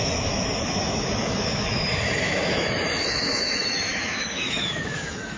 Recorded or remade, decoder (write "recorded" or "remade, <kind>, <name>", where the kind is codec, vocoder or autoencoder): remade, autoencoder, DAC-VAE